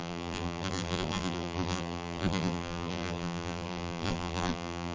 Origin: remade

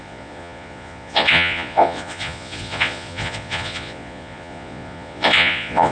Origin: remade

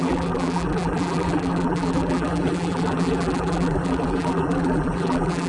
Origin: remade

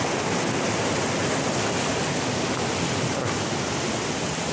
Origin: recorded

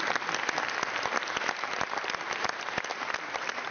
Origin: recorded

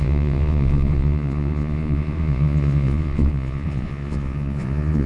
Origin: remade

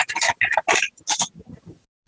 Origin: recorded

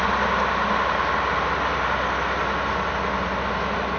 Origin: recorded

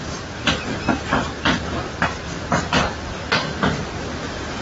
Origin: recorded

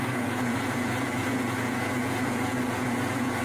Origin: remade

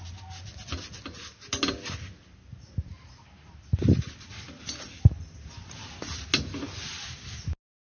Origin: recorded